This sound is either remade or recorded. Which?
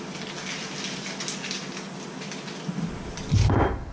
recorded